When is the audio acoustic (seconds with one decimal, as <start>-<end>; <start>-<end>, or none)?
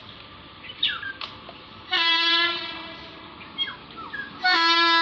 3.0-5.0